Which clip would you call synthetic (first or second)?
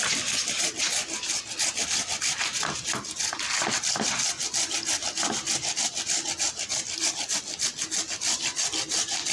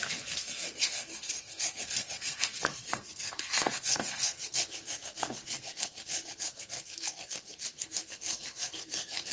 second